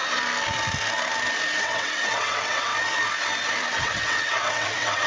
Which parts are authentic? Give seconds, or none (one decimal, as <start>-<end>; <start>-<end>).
0.0-1.6; 2.7-3.8